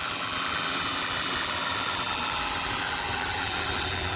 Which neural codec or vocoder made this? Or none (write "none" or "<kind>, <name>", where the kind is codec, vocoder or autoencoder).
vocoder, BigVGAN v2